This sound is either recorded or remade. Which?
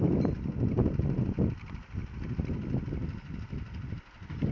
recorded